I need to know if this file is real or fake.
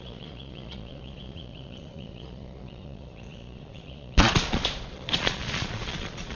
fake